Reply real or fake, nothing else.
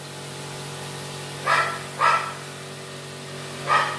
real